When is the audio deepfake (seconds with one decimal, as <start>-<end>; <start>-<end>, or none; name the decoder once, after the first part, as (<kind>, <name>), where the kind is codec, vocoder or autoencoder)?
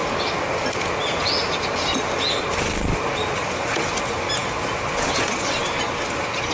none